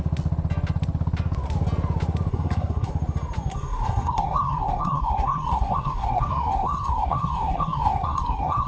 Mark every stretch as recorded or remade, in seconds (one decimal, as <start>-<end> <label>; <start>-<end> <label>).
0.0-2.3 recorded; 2.3-2.9 remade; 2.9-3.5 recorded; 3.5-8.7 remade